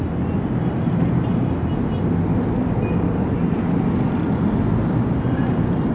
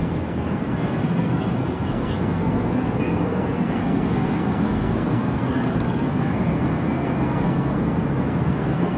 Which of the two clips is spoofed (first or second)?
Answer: second